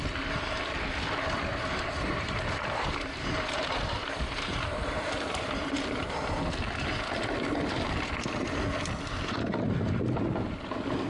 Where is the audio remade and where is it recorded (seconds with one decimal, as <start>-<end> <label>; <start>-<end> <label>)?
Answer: 0.0-1.5 recorded; 1.5-6.5 remade; 6.5-11.1 recorded